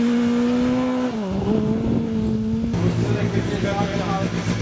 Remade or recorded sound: recorded